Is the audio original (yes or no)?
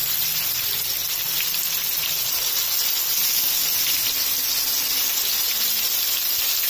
yes